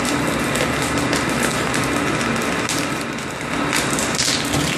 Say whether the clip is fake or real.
real